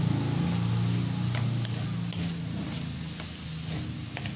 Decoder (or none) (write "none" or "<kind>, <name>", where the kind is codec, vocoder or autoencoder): none